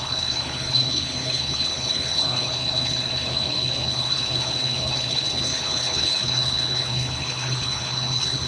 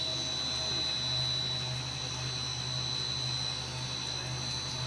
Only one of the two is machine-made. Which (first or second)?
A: first